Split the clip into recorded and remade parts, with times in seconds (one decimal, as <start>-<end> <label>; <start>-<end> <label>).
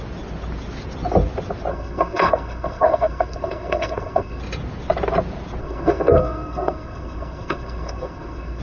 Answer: 0.0-1.7 recorded; 1.7-4.4 remade; 4.4-5.6 recorded; 5.6-8.6 remade